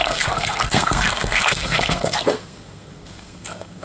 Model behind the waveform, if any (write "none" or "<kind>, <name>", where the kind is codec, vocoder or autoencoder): codec, SNAC